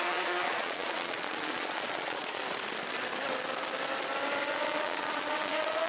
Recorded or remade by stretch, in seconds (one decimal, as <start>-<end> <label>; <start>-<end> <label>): 0.0-2.4 remade; 2.4-4.5 recorded; 4.5-5.9 remade